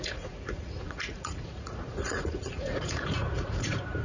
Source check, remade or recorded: remade